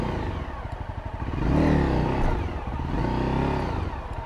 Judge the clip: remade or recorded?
recorded